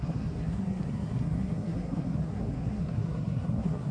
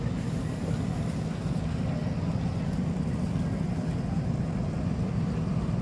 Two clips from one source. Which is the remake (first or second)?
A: first